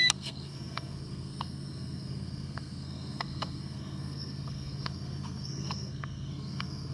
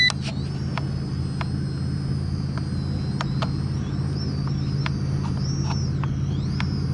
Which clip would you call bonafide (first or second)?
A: second